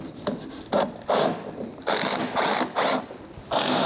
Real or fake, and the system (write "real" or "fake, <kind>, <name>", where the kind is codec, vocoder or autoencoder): real